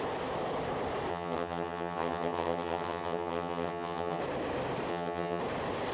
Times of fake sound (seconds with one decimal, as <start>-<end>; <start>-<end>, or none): 1.1-4.2; 4.9-5.4